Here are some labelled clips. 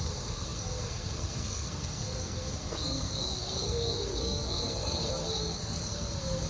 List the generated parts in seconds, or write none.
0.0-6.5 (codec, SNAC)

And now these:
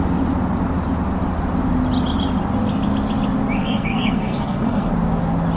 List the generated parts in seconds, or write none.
3.6-4.9 (codec, SNAC)

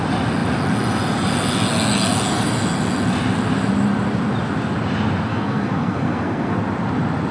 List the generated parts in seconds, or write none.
5.3-6.6 (codec, SNAC)

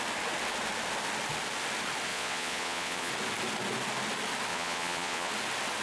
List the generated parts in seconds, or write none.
2.1-3.1 (vocoder, Vocos); 4.5-5.3

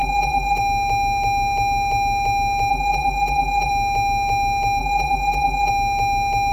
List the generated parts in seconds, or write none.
0.0-0.6 (vocoder, BigVGAN v2); 2.7-3.7; 4.8-5.7